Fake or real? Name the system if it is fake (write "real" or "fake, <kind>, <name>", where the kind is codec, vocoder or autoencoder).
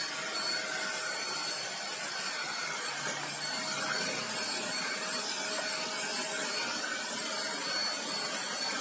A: real